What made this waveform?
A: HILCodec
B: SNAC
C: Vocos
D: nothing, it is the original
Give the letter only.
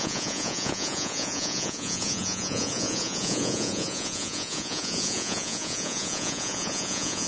C